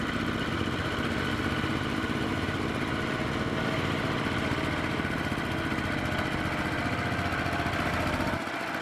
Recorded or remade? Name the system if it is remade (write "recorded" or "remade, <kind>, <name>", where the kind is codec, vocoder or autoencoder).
recorded